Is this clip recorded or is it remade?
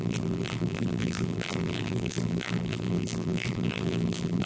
remade